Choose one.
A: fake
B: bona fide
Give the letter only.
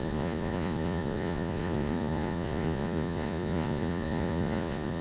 A